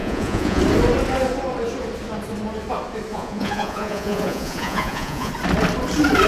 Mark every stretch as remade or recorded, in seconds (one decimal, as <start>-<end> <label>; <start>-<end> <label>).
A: 0.0-0.6 remade; 0.6-3.1 recorded; 3.1-5.3 remade; 5.3-6.3 recorded